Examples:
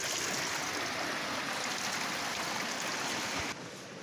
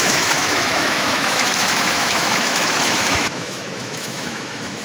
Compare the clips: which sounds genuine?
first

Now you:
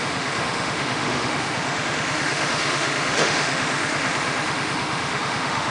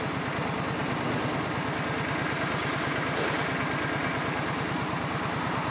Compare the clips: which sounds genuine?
second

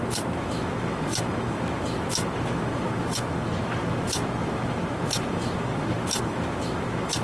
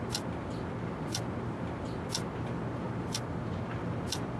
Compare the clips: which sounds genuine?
second